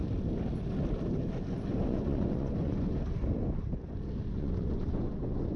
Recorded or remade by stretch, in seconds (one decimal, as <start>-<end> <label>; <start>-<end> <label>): 0.0-1.7 recorded; 1.7-3.0 remade; 3.0-4.2 recorded; 4.2-5.6 remade